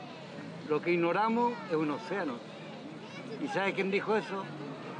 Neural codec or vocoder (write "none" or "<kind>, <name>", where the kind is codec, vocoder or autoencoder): none